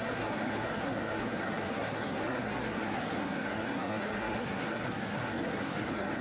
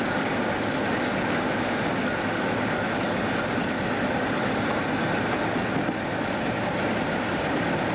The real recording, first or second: second